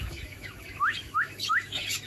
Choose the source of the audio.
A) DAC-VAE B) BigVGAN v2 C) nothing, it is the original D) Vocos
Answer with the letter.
A